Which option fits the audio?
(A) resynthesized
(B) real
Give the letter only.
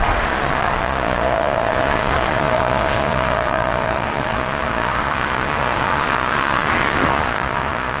A